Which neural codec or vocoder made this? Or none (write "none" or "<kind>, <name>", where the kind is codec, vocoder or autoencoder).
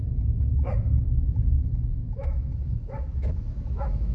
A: autoencoder, DAC-VAE